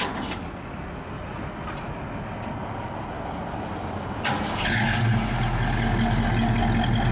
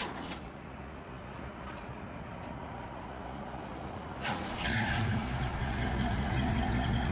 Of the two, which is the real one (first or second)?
first